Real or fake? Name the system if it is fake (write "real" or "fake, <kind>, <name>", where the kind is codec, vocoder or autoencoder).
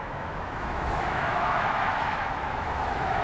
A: fake, autoencoder, DAC-VAE